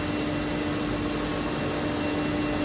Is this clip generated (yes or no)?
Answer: no